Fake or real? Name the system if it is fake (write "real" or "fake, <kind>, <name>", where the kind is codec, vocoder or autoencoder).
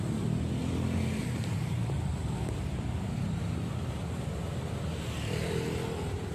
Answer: real